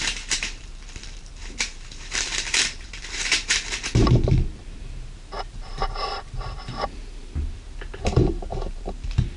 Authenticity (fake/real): fake